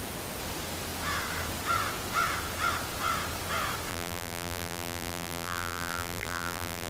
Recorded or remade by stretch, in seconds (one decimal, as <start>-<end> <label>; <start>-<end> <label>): 0.0-3.9 recorded; 3.9-6.9 remade